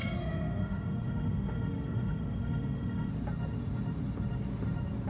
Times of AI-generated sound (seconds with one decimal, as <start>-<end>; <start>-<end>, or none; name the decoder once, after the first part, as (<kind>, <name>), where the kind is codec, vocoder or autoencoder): 0.0-3.1 (autoencoder, DAC-VAE)